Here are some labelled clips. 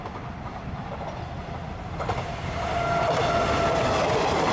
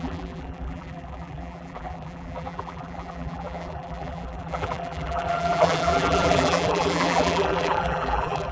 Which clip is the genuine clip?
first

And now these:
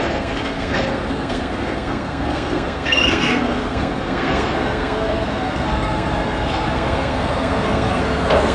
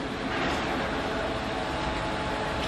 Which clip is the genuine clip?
second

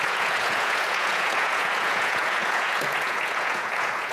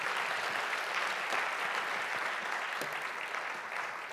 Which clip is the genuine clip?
second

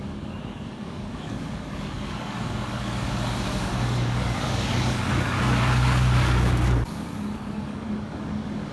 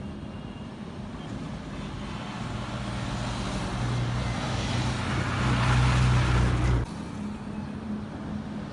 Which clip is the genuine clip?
second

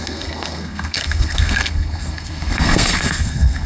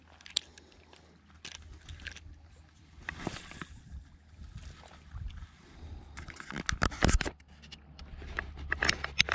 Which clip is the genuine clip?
second